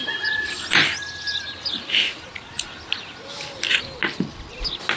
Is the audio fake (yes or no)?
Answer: no